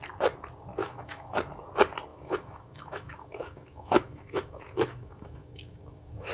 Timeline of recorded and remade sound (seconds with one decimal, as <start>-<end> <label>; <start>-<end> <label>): 0.0-0.8 recorded; 0.8-1.4 remade; 1.4-2.1 recorded; 2.1-6.3 remade